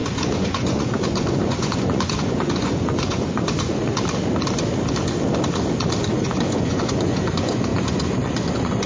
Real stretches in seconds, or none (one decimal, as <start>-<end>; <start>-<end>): 3.8-6.1